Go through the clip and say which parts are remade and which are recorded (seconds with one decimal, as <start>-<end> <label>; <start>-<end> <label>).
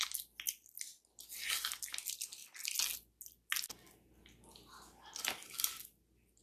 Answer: 0.0-6.4 recorded